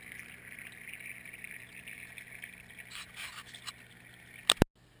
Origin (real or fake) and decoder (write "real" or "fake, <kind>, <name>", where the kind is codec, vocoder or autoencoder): real